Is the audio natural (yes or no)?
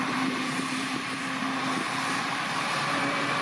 no